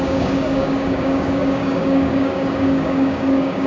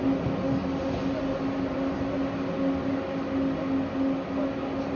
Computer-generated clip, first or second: first